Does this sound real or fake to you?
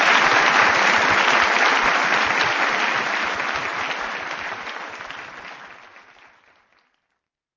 real